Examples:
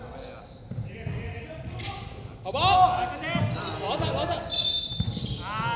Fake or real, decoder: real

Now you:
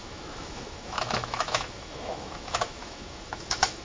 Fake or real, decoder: fake, autoencoder, DAC-VAE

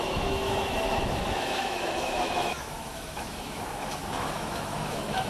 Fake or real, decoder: fake, autoencoder, DAC-VAE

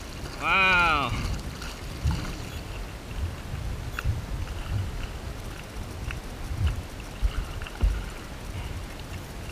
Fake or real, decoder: real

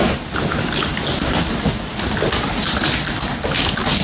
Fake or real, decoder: real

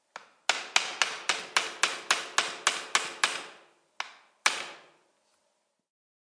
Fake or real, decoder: real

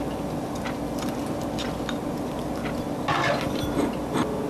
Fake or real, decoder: real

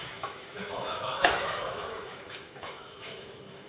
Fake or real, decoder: fake, autoencoder, DAC-VAE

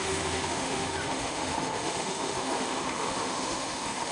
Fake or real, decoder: fake, autoencoder, DAC-VAE